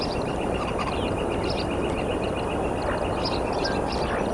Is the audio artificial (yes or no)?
no